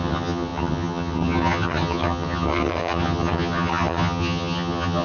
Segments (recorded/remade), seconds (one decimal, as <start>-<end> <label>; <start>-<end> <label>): 0.0-5.0 remade